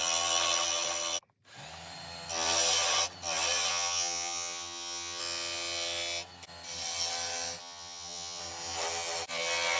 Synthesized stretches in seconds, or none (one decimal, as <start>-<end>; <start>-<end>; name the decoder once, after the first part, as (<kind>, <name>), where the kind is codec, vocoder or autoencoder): 3.7-5.2 (vocoder, HiFi-GAN); 7.6-8.4